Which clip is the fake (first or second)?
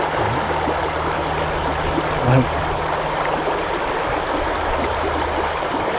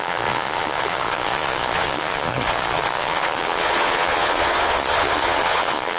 second